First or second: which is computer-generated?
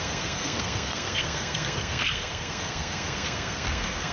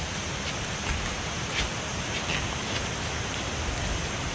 first